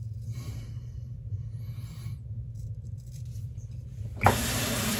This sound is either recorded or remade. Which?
remade